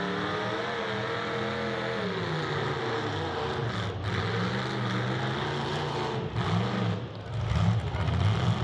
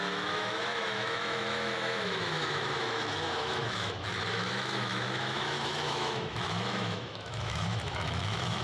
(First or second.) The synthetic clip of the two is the second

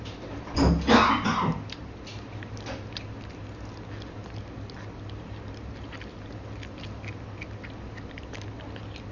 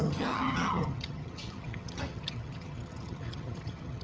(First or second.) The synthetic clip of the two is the second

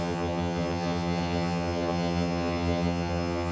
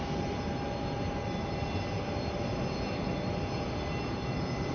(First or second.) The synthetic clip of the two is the first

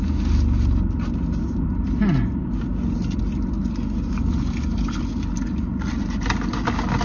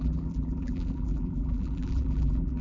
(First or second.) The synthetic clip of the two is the second